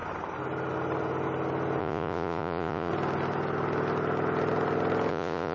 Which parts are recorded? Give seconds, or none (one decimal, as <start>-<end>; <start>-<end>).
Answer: 0.0-1.8; 2.9-5.1